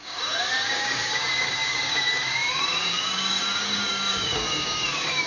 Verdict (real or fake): fake